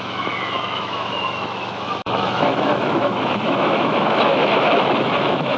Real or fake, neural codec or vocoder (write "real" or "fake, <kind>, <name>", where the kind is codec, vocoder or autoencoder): fake, autoencoder, DAC-VAE